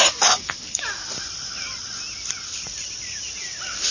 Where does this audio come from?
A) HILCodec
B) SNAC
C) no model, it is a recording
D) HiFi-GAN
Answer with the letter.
C